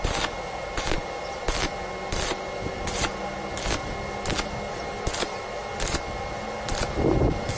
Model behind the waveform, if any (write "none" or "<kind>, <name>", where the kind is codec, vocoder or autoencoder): none